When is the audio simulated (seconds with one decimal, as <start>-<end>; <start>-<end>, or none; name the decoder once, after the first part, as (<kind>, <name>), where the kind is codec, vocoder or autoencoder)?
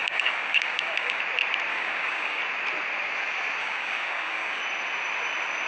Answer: 0.0-1.2 (codec, DAC); 1.7-2.4; 3.6-4.6